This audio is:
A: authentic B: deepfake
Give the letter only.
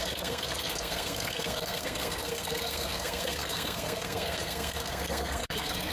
B